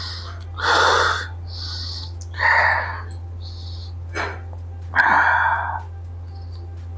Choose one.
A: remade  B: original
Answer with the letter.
B